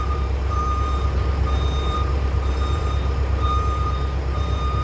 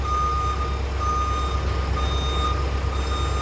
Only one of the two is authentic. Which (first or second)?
second